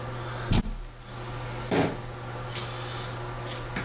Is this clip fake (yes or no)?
no